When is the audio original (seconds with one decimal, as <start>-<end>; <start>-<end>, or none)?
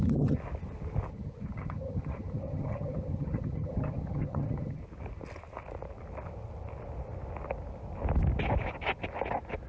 0.4-1.1; 4.8-9.7